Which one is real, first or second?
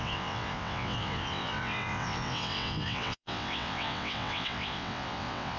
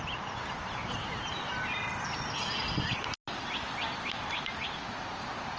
second